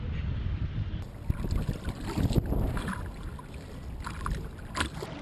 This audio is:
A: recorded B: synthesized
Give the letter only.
A